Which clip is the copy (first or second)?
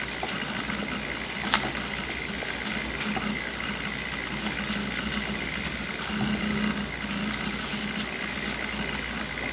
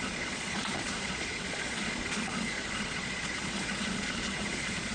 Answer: second